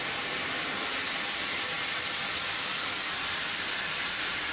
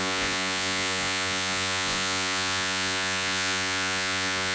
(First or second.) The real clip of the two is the first